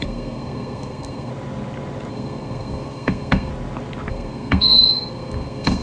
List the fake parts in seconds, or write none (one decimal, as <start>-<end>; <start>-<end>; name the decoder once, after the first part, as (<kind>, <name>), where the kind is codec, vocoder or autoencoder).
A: 0.0-1.3 (codec, SNAC); 2.1-3.5; 4.1-5.8